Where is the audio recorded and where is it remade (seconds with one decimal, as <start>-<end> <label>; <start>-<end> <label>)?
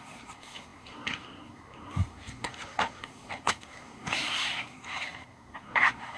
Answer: 0.0-6.2 remade